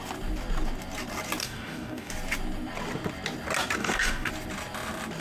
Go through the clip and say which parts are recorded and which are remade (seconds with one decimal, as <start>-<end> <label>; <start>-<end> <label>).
0.0-1.4 recorded; 1.4-2.1 remade; 2.1-3.8 recorded; 3.8-4.3 remade; 4.3-5.2 recorded